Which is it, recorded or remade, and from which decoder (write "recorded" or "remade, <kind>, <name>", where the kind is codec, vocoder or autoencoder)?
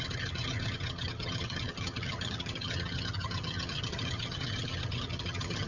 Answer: remade, vocoder, HiFi-GAN